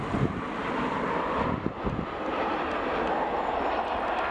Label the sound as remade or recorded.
recorded